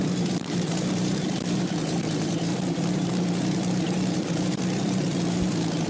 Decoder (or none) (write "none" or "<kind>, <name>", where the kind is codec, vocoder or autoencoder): vocoder, BigVGAN v2